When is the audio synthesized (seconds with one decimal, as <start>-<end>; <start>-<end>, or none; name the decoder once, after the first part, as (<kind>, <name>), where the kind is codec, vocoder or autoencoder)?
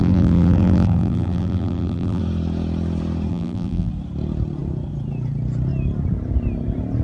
0.0-2.2 (vocoder, BigVGAN v2); 3.3-3.9